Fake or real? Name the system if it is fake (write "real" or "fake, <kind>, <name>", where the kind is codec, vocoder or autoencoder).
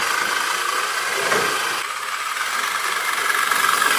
real